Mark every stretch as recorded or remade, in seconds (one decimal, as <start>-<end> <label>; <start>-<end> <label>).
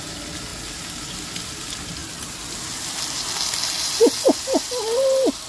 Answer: 0.0-5.5 recorded